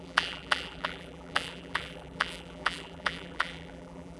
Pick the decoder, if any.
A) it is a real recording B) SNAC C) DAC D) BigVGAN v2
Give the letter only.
D